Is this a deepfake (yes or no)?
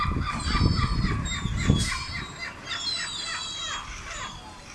no